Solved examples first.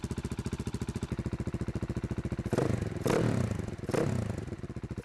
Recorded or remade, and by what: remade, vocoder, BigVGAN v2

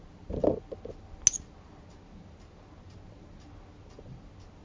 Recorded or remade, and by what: recorded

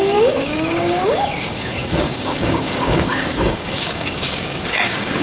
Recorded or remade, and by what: remade, codec, DAC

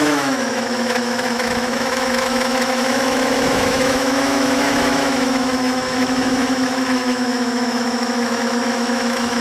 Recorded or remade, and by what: remade, autoencoder, DAC-VAE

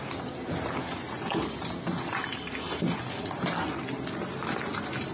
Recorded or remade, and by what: recorded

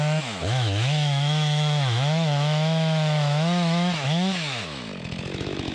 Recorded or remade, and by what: remade, autoencoder, DAC-VAE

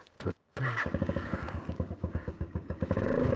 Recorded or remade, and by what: remade, codec, DAC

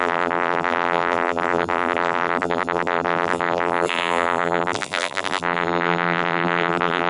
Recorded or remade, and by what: remade, vocoder, BigVGAN v2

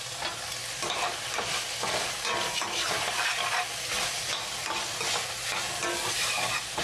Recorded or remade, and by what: recorded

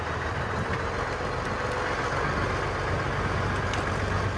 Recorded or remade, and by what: recorded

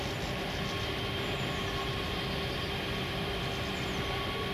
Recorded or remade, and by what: recorded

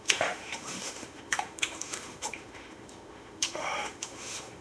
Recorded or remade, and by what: remade, autoencoder, DAC-VAE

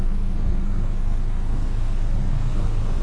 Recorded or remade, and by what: remade, codec, SNAC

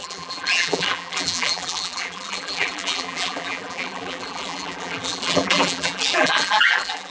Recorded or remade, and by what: remade, vocoder, BigVGAN v2